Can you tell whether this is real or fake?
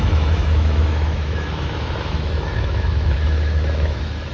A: fake